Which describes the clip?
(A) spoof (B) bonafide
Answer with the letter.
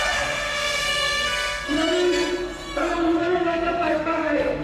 A